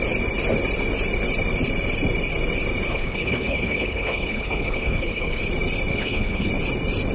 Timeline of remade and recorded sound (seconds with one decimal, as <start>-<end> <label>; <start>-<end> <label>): 0.0-2.9 recorded; 2.9-5.4 remade; 5.4-5.9 recorded; 5.9-6.5 remade; 6.5-7.1 recorded